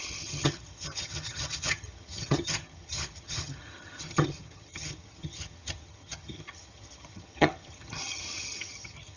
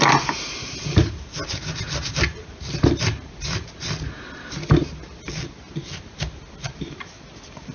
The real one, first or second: second